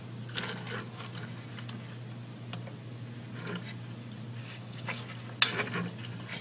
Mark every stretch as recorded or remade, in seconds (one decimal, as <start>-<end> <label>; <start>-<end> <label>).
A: 0.0-4.4 recorded; 4.4-5.0 remade; 5.0-6.4 recorded